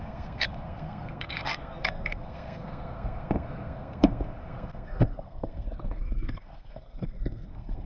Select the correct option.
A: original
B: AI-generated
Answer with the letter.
B